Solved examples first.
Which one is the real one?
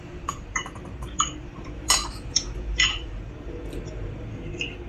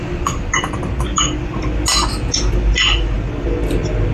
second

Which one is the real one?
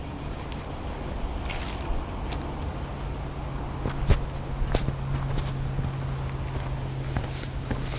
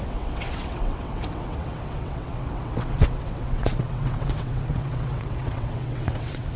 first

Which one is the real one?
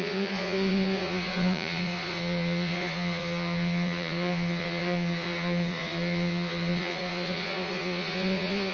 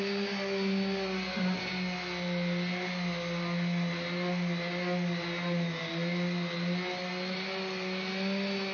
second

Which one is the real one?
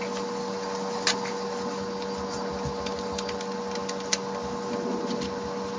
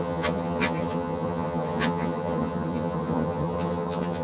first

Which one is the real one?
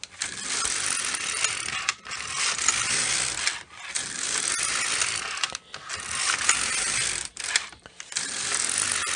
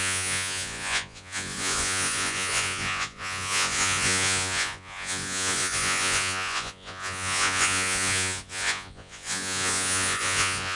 first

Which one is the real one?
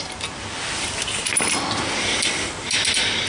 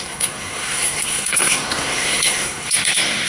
first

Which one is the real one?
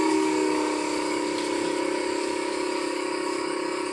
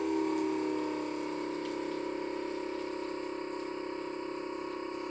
second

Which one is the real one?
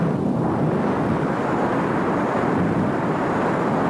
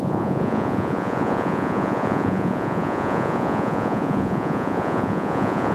first